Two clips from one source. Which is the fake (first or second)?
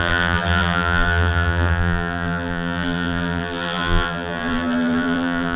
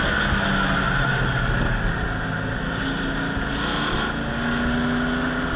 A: first